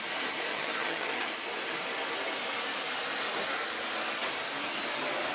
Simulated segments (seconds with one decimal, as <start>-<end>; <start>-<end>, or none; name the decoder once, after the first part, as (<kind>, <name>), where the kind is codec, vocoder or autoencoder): 0.5-1.3 (vocoder, HiFi-GAN)

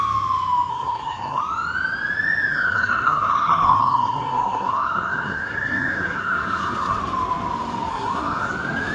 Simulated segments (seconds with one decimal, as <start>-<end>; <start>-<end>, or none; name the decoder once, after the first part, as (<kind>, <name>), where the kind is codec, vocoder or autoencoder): 0.7-1.4 (codec, SNAC); 2.5-7.0; 7.9-8.5

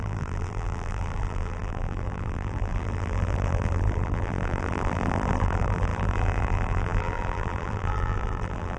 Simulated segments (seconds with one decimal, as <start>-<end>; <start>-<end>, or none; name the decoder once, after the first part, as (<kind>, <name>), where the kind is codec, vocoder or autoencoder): 0.0-8.8 (vocoder, BigVGAN v2)

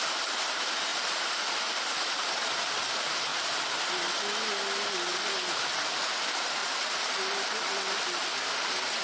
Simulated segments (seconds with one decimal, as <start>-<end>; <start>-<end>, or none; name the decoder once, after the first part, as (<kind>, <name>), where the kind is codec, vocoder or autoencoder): 0.9-2.5 (vocoder, BigVGAN v2); 3.3-3.9; 5.1-6.1; 6.6-9.0

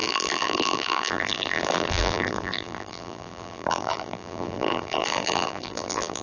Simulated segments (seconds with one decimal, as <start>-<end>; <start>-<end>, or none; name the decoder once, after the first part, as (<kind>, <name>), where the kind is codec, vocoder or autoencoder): 0.0-6.2 (vocoder, BigVGAN v2)

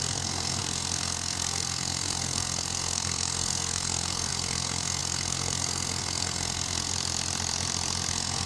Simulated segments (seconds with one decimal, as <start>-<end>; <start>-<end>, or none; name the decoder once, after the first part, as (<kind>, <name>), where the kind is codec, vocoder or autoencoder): 0.0-6.9 (codec, SNAC); 8.1-8.5

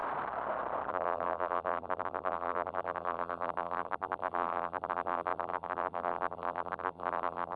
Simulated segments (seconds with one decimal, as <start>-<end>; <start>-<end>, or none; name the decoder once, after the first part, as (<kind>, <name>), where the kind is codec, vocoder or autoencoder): 0.9-7.6 (vocoder, BigVGAN v2)